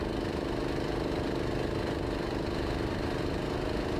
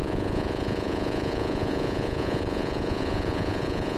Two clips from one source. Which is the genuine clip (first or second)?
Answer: first